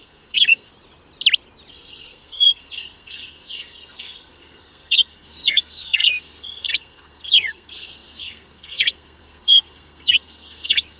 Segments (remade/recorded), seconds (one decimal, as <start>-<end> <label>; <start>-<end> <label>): 0.0-0.7 remade; 0.7-1.7 recorded; 1.7-11.0 remade